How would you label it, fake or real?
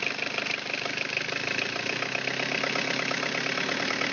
real